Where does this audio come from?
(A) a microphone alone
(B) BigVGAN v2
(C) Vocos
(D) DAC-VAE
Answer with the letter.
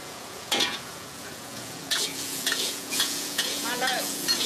C